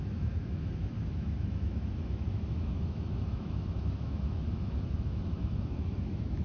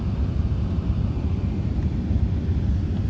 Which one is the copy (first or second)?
first